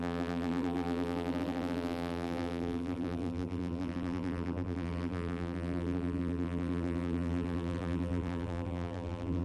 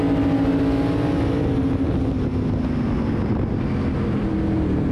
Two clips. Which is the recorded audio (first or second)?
second